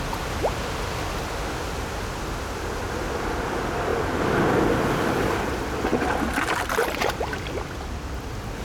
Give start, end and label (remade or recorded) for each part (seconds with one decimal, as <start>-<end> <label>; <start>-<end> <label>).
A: 0.0-8.6 recorded